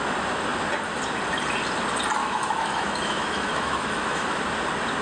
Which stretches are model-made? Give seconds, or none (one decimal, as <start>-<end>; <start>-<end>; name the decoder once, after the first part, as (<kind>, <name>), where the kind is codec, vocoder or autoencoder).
2.2-4.4 (autoencoder, DAC-VAE)